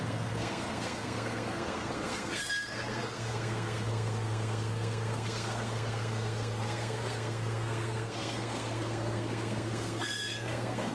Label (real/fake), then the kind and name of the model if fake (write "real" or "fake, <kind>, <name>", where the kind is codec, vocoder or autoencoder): fake, codec, SNAC